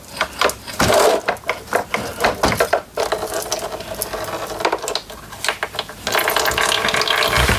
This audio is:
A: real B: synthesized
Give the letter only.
A